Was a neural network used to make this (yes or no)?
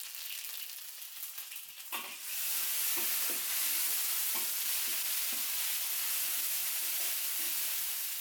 no